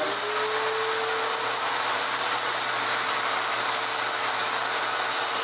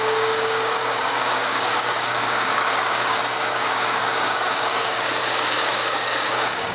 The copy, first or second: second